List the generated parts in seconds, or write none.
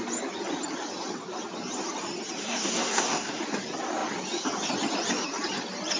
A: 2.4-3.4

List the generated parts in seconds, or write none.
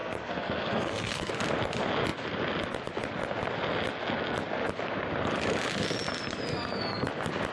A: 0.0-1.3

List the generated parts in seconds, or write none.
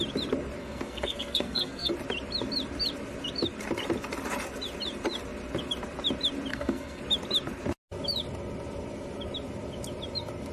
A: 0.6-1.9; 6.5-7.0